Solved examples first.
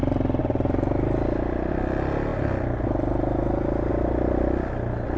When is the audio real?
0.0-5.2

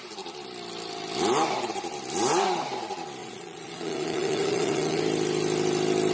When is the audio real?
0.0-3.2; 5.0-6.1

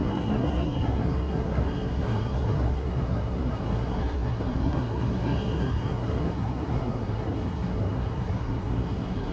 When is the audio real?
none

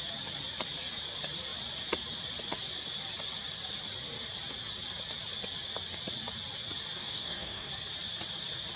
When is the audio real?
0.0-7.0; 7.7-8.8

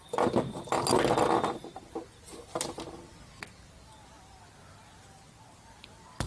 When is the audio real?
0.0-6.3

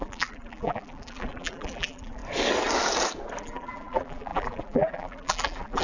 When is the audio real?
2.2-3.4